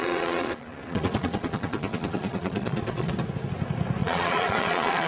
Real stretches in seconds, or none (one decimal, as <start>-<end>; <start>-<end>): 3.1-4.0